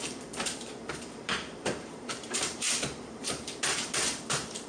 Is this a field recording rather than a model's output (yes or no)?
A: no